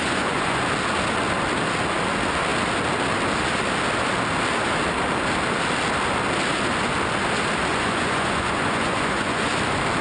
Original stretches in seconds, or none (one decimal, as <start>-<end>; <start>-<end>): 0.6-7.7; 9.5-10.0